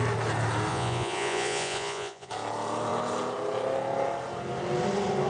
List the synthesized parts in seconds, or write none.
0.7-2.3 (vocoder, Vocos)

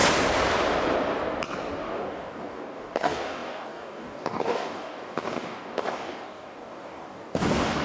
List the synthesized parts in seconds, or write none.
1.7-7.8 (codec, DAC)